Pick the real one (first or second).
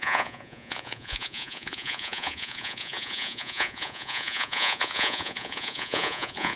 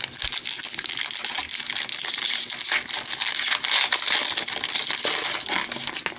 second